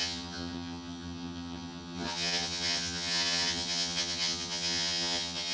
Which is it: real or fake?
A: fake